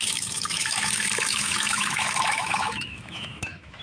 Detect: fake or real fake